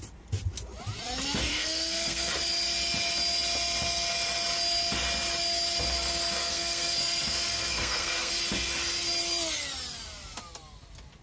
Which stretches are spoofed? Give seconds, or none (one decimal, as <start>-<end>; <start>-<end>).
1.5-2.3; 6.4-8.3